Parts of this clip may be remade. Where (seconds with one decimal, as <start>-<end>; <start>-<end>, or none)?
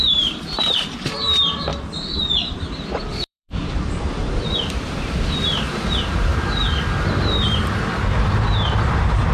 0.0-1.7; 2.4-9.3